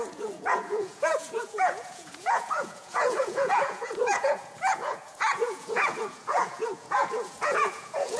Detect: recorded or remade remade